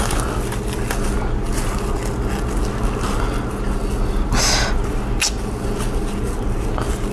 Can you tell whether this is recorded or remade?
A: recorded